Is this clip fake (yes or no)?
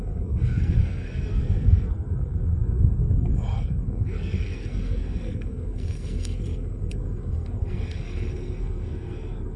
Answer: yes